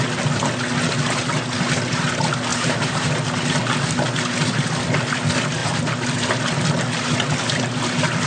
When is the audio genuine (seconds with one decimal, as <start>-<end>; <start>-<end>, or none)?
0.0-2.5; 3.1-8.3